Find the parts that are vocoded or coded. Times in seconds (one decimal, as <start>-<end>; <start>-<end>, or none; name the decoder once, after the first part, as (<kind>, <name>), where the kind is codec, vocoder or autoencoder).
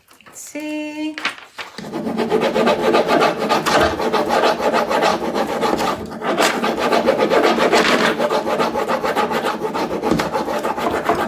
5.1-6.5 (vocoder, BigVGAN v2)